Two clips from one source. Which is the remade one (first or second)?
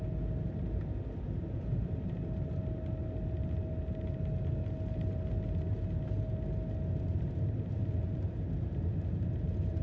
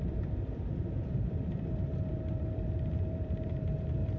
second